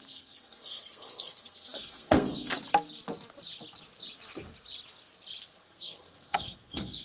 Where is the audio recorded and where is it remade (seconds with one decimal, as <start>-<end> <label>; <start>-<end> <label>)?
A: 0.0-2.5 remade; 2.5-5.4 recorded; 5.4-7.0 remade